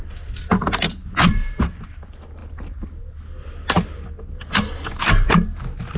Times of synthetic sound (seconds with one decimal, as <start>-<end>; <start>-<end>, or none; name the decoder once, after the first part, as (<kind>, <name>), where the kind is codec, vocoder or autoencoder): none